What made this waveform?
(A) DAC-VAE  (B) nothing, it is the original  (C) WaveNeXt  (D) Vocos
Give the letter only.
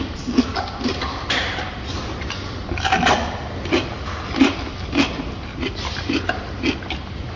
B